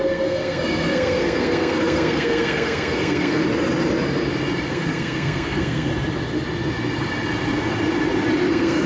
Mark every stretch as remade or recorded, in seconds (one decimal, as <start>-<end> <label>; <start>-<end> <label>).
0.0-3.4 remade; 3.4-4.7 recorded; 4.7-5.9 remade; 5.9-8.5 recorded; 8.5-8.9 remade